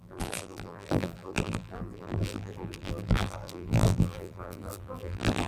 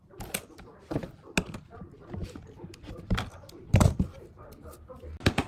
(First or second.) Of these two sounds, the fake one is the first